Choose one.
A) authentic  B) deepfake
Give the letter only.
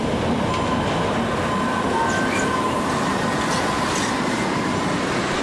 A